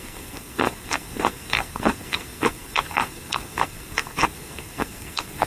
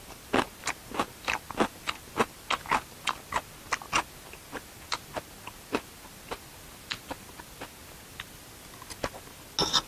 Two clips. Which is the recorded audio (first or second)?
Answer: second